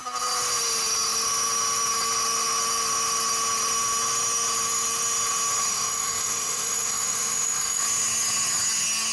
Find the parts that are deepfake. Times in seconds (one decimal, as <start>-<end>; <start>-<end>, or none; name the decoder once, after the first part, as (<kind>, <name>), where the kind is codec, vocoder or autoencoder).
5.7-7.8 (autoencoder, DAC-VAE)